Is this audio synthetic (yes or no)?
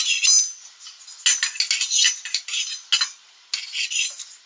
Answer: no